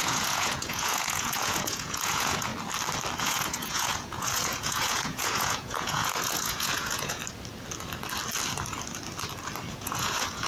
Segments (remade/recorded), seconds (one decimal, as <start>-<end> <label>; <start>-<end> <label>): 0.0-2.5 remade; 2.5-3.2 recorded; 3.2-7.2 remade; 7.2-9.7 recorded; 9.7-10.5 remade